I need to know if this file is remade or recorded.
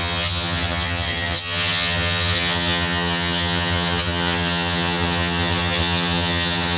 remade